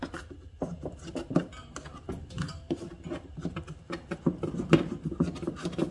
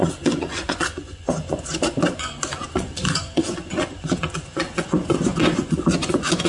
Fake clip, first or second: second